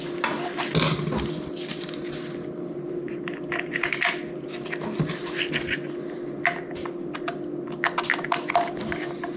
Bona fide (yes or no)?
yes